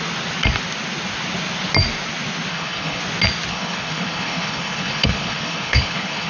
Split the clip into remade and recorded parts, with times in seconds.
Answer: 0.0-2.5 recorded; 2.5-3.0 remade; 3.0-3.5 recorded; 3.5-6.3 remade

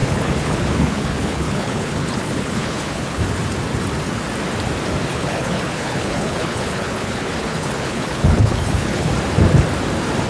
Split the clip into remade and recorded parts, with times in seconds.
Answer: 0.0-3.2 remade; 3.2-5.1 recorded; 5.1-9.1 remade; 9.1-10.3 recorded

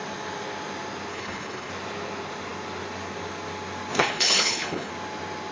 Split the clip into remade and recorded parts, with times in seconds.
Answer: 0.0-1.1 recorded; 1.1-1.7 remade; 1.7-3.9 recorded; 3.9-4.9 remade; 4.9-5.5 recorded

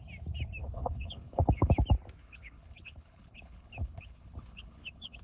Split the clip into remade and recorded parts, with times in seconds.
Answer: 0.0-0.6 recorded; 0.6-1.7 remade; 1.7-2.2 recorded; 2.2-5.2 remade

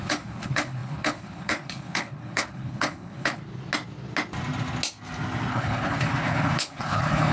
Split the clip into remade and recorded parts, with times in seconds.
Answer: 0.0-3.4 remade; 3.4-5.5 recorded; 5.5-7.3 remade

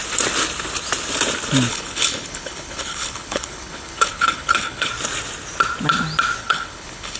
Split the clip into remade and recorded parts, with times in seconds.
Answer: 0.0-1.7 recorded; 1.7-4.9 remade; 4.9-6.4 recorded; 6.4-7.2 remade